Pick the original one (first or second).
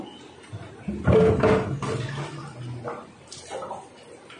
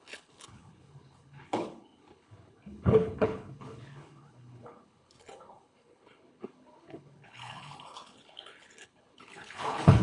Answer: first